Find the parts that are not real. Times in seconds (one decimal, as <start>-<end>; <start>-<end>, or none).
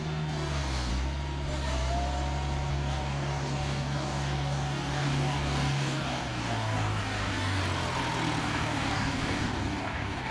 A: 0.0-0.9; 2.7-7.6; 8.4-10.3